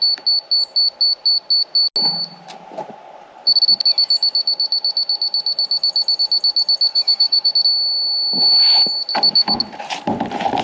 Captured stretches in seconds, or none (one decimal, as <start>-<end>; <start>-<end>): 0.0-6.9; 7.5-10.6